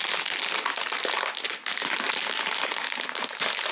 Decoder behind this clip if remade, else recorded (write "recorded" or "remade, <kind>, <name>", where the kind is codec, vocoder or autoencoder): recorded